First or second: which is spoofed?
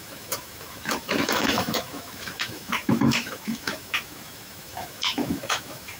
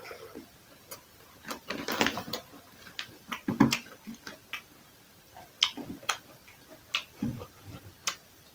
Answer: first